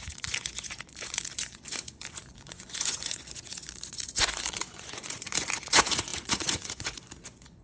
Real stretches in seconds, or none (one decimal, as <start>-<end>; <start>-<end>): none